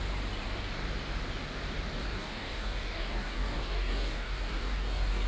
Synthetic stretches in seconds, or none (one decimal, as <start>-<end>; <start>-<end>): 2.0-5.3